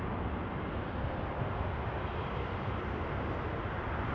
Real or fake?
real